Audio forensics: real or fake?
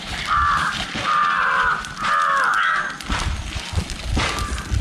real